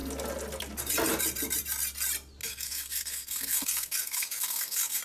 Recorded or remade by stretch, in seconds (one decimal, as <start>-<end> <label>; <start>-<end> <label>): 0.0-2.4 recorded; 2.4-5.0 remade